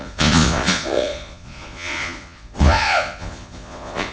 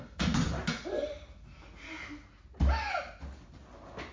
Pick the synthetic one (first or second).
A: first